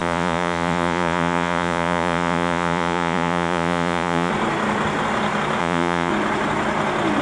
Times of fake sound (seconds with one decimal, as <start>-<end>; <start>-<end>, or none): 0.0-4.3; 5.6-6.1